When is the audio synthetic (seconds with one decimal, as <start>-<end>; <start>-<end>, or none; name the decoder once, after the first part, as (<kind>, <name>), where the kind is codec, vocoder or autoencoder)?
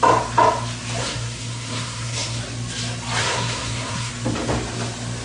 1.0-2.4 (codec, SNAC); 3.2-4.1